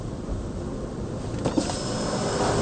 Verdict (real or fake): fake